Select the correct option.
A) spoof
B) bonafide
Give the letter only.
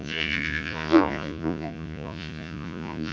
A